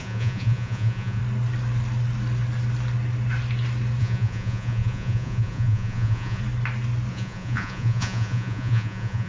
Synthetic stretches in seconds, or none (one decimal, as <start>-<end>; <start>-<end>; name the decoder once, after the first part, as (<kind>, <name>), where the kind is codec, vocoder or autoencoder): 0.0-1.2 (vocoder, Vocos); 4.0-6.4; 7.1-9.3